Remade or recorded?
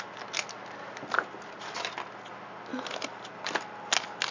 recorded